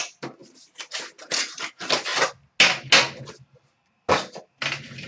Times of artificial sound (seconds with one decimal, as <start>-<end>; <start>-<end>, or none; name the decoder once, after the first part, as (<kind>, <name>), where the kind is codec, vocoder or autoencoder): none